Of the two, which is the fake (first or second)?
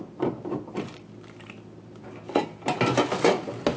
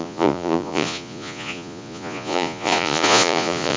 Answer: second